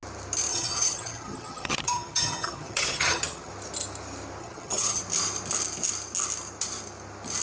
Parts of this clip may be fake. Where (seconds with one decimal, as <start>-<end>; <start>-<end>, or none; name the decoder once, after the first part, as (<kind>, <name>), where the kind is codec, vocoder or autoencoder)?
0.5-3.5 (vocoder, HiFi-GAN); 4.4-5.0